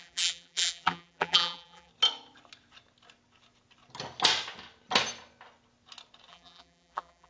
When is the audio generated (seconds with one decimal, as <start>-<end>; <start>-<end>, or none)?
0.0-1.9; 6.3-7.3